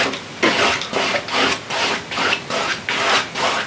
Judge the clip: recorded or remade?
recorded